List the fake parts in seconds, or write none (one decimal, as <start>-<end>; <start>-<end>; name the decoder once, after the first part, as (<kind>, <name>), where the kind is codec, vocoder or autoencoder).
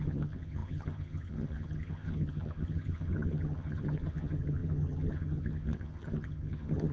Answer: 0.0-6.9 (vocoder, HiFi-GAN)